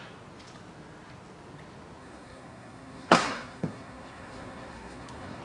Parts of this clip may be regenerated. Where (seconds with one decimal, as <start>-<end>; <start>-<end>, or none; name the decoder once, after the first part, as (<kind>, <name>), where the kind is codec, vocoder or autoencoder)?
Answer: 2.0-5.4 (codec, SNAC)

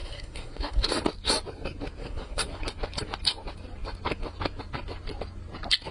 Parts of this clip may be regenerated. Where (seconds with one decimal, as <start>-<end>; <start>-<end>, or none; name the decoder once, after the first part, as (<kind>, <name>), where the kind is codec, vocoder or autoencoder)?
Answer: 0.0-0.9 (codec, SNAC); 2.0-2.6

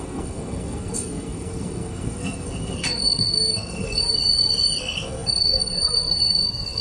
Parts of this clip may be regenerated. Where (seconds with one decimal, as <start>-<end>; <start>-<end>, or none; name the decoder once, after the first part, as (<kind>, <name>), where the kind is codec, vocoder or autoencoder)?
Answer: 0.0-4.0 (codec, SNAC); 4.8-6.8